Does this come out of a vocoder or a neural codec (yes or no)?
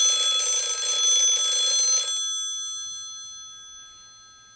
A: no